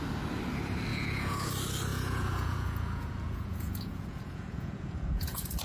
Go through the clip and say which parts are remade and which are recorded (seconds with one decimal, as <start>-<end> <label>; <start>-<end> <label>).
0.0-0.9 recorded; 0.9-1.5 remade; 1.5-1.9 recorded; 1.9-5.6 remade